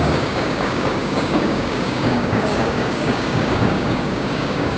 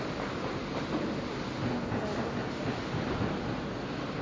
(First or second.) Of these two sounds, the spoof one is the first